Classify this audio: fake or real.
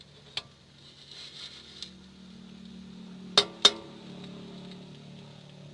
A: real